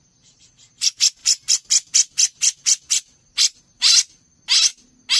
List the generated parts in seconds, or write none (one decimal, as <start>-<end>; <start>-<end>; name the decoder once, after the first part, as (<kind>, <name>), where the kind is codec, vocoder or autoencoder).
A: none